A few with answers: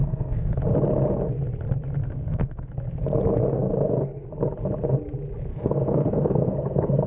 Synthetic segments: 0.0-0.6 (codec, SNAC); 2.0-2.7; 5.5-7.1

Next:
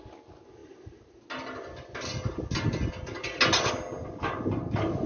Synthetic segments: none

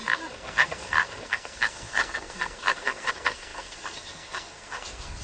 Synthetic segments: 0.0-5.2 (codec, SNAC)

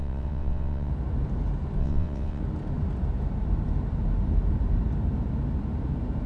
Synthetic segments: 0.0-0.9 (vocoder, WaveNeXt); 1.8-2.4

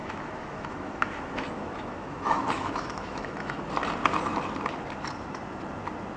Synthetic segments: 0.0-3.7 (autoencoder, DAC-VAE)